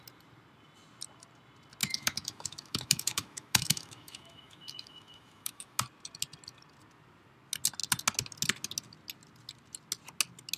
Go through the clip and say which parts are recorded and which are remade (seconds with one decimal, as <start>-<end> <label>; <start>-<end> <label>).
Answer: 0.0-1.8 recorded; 1.8-5.8 remade; 5.8-10.6 recorded